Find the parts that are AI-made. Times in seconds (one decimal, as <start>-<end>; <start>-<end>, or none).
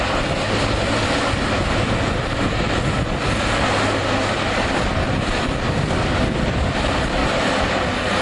0.0-7.2